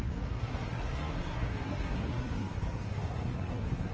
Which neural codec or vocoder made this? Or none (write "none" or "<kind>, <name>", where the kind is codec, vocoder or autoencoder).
codec, SNAC